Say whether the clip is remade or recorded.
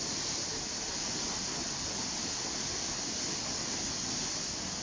recorded